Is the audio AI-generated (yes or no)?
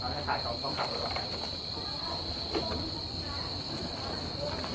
no